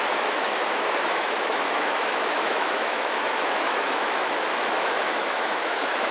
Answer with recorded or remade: remade